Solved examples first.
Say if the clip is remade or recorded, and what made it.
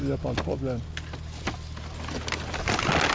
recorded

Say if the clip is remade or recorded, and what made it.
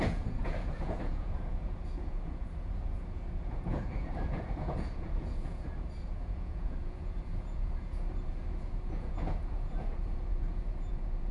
remade, vocoder, Vocos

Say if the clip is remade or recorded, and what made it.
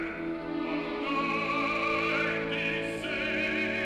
recorded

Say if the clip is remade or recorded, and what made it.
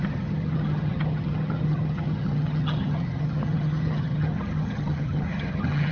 remade, vocoder, HiFi-GAN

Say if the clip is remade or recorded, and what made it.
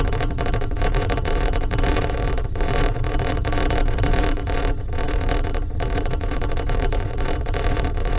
remade, vocoder, WaveNeXt